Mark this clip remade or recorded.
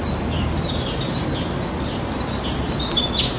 recorded